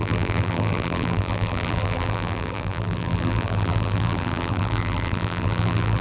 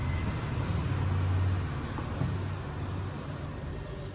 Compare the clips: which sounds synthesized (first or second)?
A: first